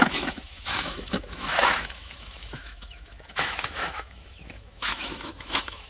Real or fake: fake